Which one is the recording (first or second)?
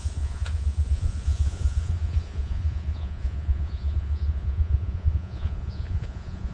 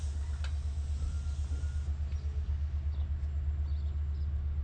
second